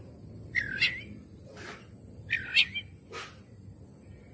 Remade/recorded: recorded